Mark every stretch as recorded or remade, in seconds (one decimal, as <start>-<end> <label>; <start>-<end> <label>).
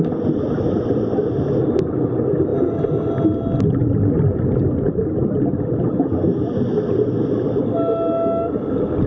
0.0-5.2 recorded; 5.2-7.6 remade; 7.6-9.1 recorded